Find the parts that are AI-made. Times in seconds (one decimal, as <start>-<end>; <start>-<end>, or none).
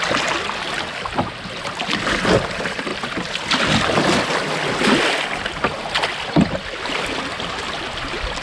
none